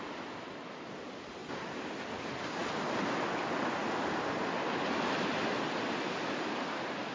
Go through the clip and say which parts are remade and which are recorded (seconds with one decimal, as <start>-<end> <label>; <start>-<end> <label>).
0.0-7.1 recorded